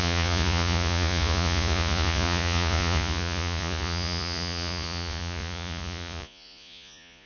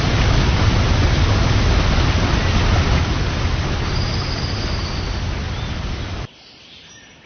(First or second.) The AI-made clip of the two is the first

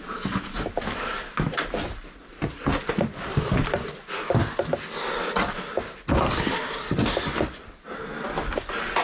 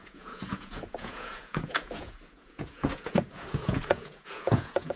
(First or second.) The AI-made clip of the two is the second